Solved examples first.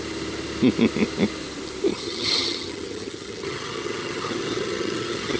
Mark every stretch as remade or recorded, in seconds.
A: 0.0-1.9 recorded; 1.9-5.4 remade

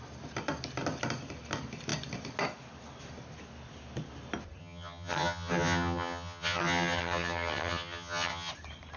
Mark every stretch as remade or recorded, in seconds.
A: 0.0-4.6 recorded; 4.6-8.5 remade; 8.5-9.0 recorded

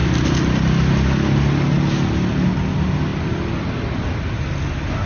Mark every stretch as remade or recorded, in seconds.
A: 0.0-5.1 recorded

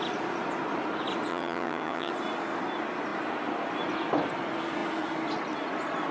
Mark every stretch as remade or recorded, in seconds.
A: 0.0-1.3 recorded; 1.3-2.1 remade; 2.1-6.1 recorded

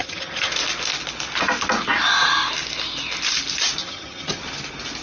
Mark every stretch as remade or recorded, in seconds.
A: 0.0-0.5 remade; 0.5-3.8 recorded; 3.8-4.4 remade; 4.4-5.0 recorded

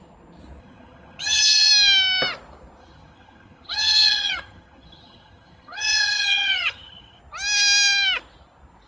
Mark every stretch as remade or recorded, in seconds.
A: 0.0-0.6 recorded; 0.6-1.7 remade; 1.7-2.8 recorded; 2.8-7.2 remade; 7.2-8.9 recorded

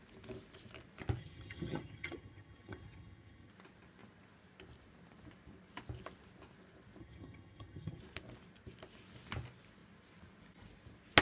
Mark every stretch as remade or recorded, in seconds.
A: 0.0-1.2 recorded; 1.2-3.5 remade; 3.5-7.0 recorded; 7.0-8.0 remade; 8.0-11.2 recorded

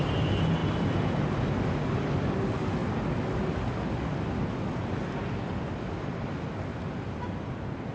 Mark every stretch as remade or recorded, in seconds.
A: 0.0-7.9 recorded